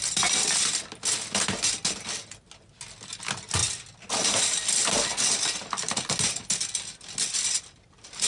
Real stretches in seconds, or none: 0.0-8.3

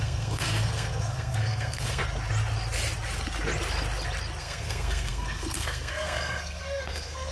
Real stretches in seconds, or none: 2.0-4.4

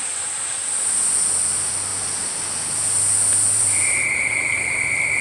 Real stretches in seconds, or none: 0.0-5.2

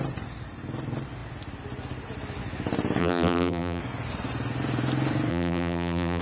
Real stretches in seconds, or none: 0.0-3.0; 3.8-5.3

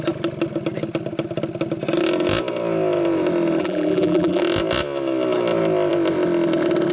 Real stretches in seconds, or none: 0.0-3.6; 4.4-6.9

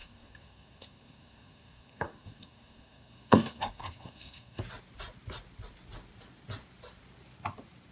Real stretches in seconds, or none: 4.6-7.9